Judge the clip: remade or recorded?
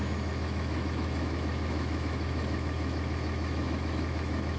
remade